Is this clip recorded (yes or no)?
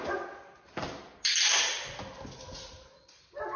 yes